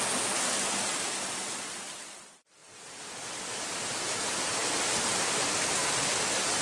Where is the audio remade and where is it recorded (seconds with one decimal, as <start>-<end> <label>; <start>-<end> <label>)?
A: 0.0-6.6 recorded